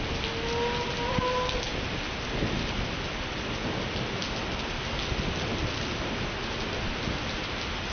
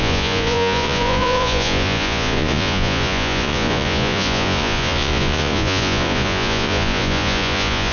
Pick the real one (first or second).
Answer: first